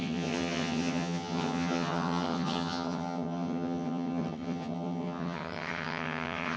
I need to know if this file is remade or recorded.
remade